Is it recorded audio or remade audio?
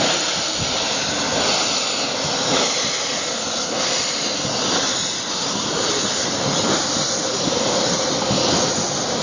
recorded